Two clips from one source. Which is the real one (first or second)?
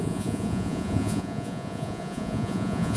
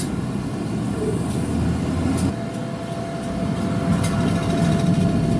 second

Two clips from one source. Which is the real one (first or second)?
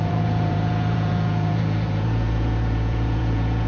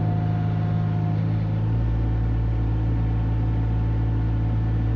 second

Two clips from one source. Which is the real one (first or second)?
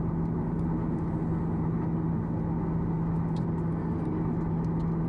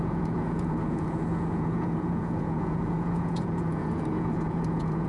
first